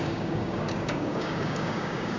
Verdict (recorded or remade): remade